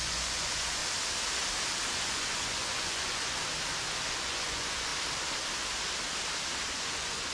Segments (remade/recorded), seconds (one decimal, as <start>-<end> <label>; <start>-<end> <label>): 0.0-0.8 remade; 0.8-1.9 recorded; 1.9-3.4 remade; 3.4-4.1 recorded; 4.1-4.9 remade; 4.9-6.7 recorded; 6.7-7.3 remade